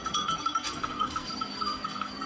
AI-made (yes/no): yes